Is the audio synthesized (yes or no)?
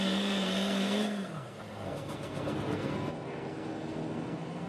yes